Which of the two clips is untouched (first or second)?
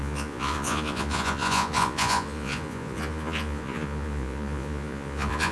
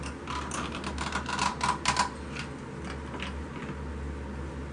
second